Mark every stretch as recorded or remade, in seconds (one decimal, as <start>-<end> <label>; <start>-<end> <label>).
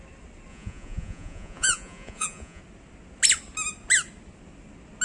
0.0-0.5 recorded; 0.5-2.6 remade; 2.6-5.0 recorded